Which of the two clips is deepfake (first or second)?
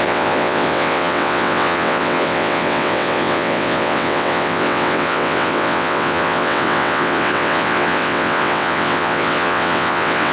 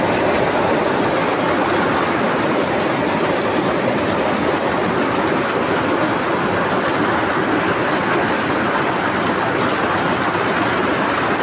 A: first